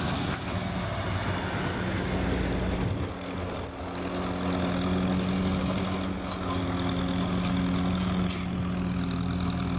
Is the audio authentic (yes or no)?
yes